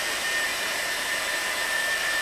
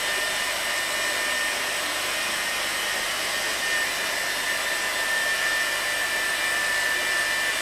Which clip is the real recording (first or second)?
second